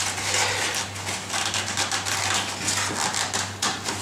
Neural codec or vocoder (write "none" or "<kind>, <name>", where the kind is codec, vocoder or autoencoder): none